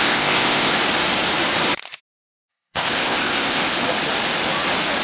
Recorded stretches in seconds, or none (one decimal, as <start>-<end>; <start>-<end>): 0.7-2.5; 3.6-5.0